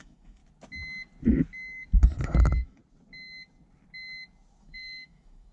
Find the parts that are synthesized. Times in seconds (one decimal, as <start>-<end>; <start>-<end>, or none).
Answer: 0.0-0.4; 2.4-2.8; 4.6-5.5